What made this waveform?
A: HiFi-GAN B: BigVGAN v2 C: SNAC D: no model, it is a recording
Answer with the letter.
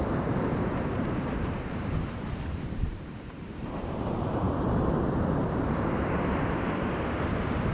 B